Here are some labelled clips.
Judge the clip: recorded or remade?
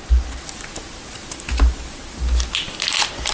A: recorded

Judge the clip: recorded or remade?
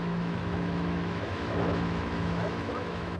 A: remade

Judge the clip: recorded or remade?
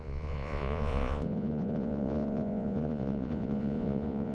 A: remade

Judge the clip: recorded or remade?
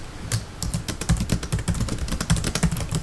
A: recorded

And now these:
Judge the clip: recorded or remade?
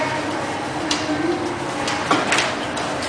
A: recorded